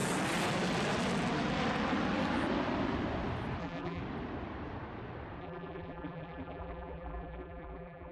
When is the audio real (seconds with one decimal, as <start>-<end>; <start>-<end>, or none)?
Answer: 0.0-3.6; 4.0-5.4